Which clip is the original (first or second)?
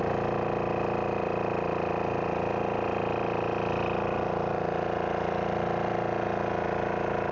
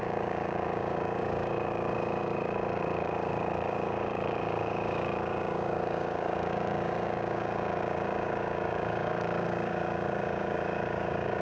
first